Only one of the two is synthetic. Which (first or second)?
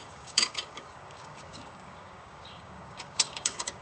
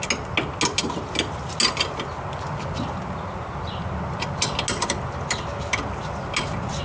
first